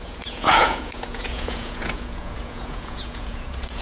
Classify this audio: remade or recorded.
remade